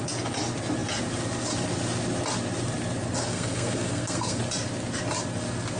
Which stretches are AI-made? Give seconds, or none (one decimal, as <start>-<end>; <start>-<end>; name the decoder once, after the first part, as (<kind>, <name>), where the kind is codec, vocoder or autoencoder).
3.2-4.4 (codec, SNAC)